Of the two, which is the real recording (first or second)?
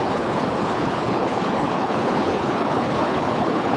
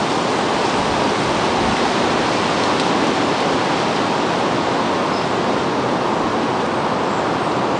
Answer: second